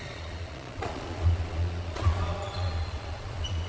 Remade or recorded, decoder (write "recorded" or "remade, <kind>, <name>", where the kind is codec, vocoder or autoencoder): remade, vocoder, Vocos